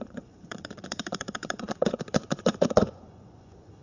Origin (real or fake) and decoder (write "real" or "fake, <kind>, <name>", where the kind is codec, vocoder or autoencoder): fake, vocoder, Vocos